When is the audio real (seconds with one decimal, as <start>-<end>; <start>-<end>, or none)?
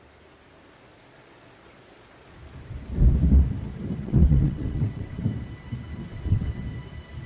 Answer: 0.0-4.0; 5.2-6.1; 6.6-7.3